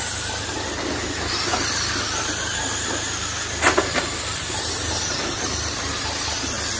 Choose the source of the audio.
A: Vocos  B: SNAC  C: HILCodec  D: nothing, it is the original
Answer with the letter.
D